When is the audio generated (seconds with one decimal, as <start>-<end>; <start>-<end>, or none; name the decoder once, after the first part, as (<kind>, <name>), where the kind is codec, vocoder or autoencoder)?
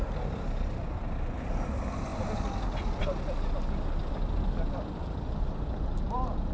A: none